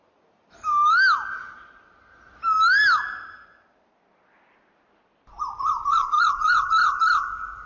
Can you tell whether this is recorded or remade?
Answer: recorded